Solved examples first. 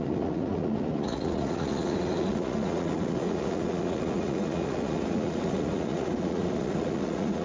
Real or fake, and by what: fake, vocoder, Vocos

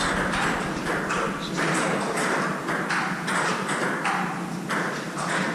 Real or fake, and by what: real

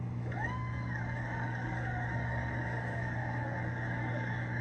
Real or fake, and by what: fake, codec, DAC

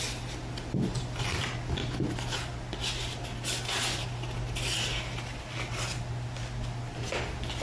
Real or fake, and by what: real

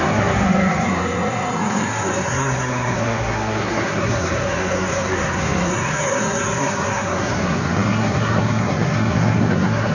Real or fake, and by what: fake, codec, SNAC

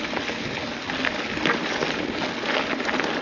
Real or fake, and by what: real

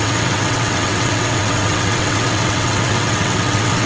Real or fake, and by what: fake, vocoder, WaveNeXt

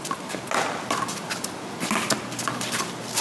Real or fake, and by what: real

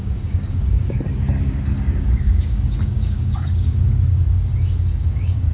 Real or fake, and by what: fake, codec, DAC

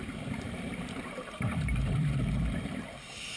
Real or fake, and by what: fake, vocoder, BigVGAN v2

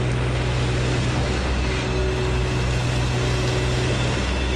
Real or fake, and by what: real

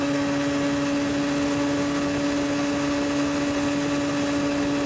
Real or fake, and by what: real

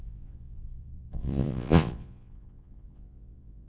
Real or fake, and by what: fake, vocoder, Vocos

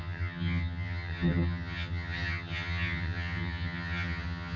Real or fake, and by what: fake, vocoder, HiFi-GAN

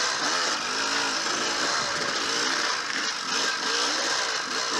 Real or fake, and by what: real